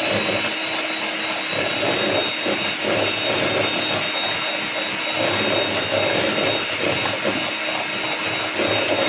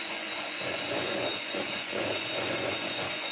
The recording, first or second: first